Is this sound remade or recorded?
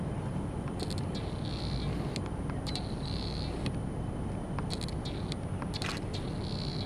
recorded